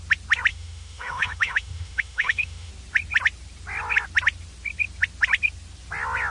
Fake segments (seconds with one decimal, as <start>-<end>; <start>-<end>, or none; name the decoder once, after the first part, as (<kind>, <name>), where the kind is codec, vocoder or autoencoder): 0.5-2.7 (autoencoder, DAC-VAE)